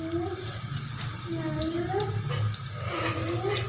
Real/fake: real